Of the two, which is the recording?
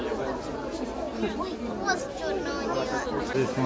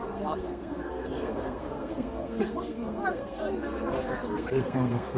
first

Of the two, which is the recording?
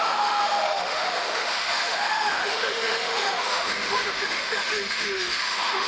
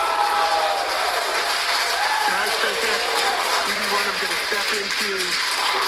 second